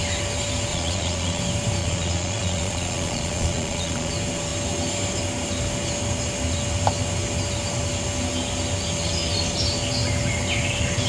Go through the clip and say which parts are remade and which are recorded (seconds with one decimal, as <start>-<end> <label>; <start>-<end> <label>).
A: 0.0-0.7 recorded; 0.7-1.4 remade; 1.4-1.8 recorded; 1.8-4.1 remade; 4.1-11.1 recorded